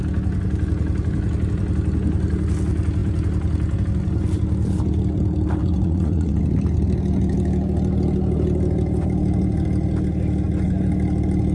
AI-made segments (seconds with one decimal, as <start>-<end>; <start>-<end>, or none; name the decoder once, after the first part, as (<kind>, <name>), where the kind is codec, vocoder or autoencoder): 5.6-6.4 (vocoder, Vocos)